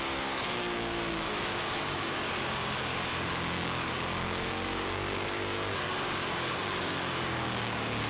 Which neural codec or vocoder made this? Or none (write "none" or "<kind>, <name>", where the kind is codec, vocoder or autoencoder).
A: codec, DAC